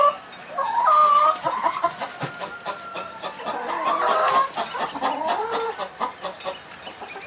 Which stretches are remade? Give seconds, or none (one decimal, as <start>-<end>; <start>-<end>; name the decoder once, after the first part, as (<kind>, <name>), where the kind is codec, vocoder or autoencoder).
none